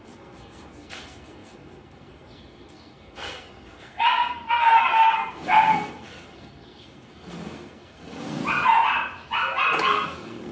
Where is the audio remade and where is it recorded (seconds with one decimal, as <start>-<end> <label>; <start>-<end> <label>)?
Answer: 0.0-8.4 remade; 8.4-9.8 recorded; 9.8-10.5 remade

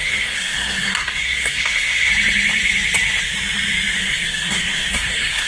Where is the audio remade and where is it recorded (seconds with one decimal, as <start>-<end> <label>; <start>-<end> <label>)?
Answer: 0.0-2.1 remade; 2.1-4.0 recorded; 4.0-5.5 remade

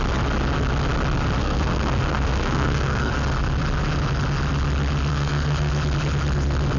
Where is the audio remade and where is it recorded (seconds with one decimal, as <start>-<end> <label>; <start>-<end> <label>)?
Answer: 0.0-1.4 recorded; 1.4-3.1 remade; 3.1-5.1 recorded; 5.1-5.7 remade; 5.7-6.8 recorded